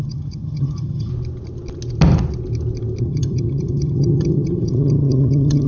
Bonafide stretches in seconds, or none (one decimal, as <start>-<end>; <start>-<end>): 1.1-3.0